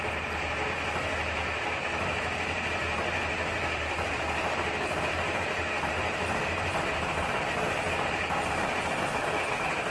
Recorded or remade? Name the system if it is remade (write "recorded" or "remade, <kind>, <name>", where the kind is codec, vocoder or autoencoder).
recorded